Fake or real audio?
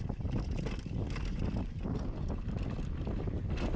real